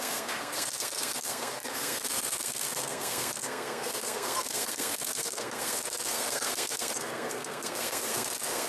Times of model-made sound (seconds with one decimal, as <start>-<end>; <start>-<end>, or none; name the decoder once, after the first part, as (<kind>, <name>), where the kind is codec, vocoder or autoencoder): 0.0-8.7 (codec, SNAC)